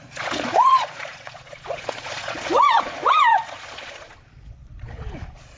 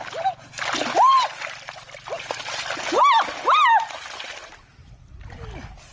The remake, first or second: first